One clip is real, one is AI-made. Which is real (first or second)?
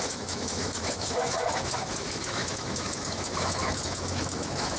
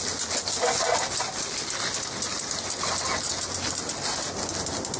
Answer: second